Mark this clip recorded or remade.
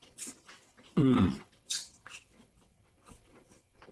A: remade